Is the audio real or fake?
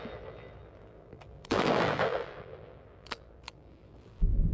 fake